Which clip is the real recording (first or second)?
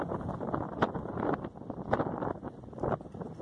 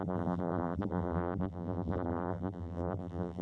first